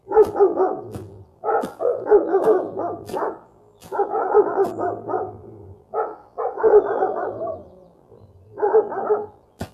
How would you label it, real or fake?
fake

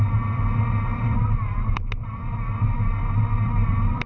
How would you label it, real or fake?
real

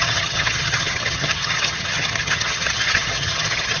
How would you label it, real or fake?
fake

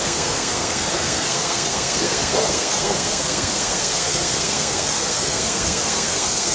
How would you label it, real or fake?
fake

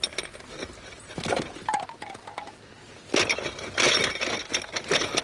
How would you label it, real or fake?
real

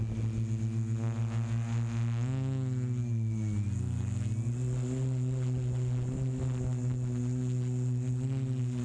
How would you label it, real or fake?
real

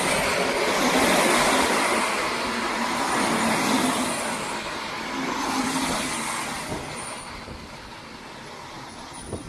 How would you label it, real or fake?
real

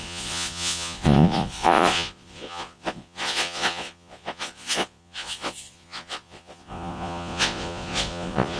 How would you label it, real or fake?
fake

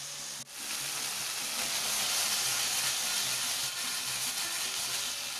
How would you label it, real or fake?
real